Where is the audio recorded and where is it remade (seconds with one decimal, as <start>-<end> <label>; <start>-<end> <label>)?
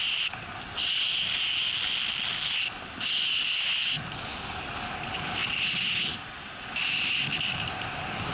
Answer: 0.0-8.3 recorded